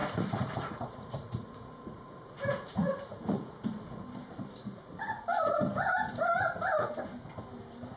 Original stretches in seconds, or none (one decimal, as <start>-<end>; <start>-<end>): 4.0-4.6; 5.2-8.0